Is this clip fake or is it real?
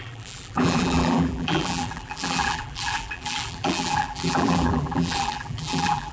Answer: fake